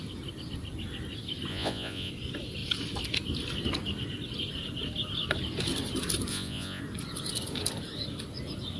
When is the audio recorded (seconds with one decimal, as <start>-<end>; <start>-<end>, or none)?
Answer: 0.0-1.5; 2.1-6.3; 6.8-8.8